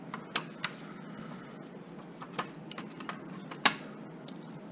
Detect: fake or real real